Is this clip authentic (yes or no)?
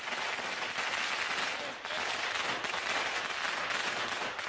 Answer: yes